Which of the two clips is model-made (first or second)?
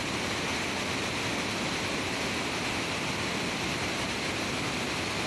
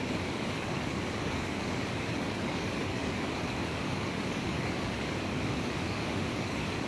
second